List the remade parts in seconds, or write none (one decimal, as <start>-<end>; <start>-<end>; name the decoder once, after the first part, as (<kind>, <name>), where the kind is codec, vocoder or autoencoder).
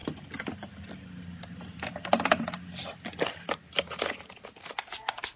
none